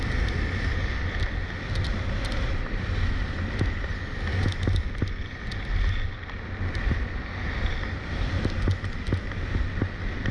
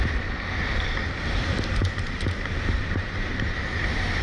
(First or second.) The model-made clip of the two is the second